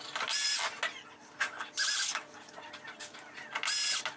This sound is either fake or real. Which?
real